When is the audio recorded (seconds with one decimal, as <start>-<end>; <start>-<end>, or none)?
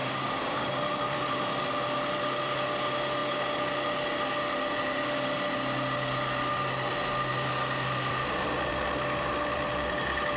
0.7-10.4